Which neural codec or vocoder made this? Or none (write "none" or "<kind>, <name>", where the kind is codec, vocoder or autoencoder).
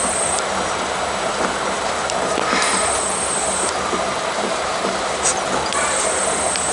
none